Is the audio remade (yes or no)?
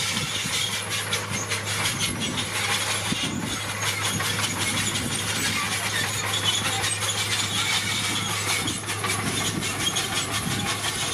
no